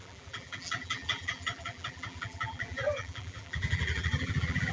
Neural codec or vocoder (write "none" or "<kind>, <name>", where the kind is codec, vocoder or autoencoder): vocoder, BigVGAN v2